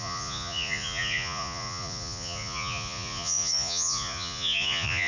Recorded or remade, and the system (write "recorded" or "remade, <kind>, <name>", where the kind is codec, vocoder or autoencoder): remade, vocoder, Vocos